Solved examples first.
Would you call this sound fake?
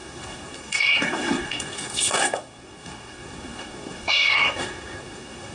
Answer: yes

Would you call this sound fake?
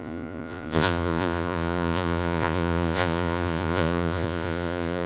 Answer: yes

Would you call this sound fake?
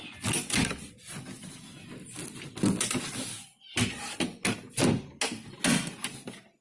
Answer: no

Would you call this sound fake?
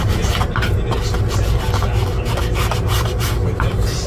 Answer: no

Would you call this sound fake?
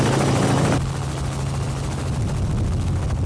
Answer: no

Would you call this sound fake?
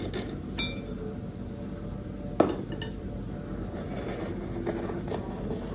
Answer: no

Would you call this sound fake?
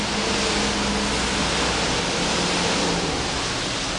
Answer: no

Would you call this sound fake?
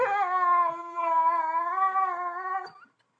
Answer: no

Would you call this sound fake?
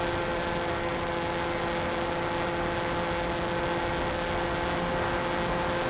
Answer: no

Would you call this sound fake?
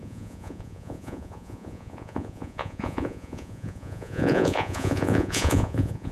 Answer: yes